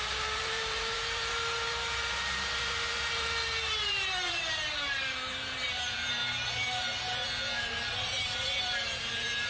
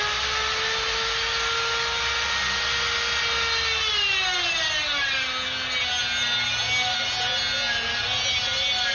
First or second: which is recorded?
second